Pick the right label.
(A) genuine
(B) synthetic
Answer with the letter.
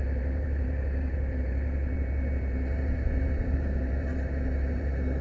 B